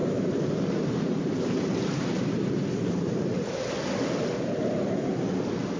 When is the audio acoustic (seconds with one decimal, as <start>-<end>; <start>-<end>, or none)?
3.5-5.8